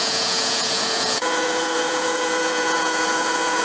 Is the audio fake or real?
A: fake